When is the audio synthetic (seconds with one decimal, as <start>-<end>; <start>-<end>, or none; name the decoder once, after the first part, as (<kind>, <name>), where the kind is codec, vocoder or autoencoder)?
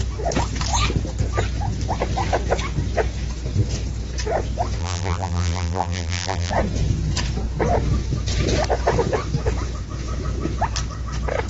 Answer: 4.8-6.5 (vocoder, BigVGAN v2)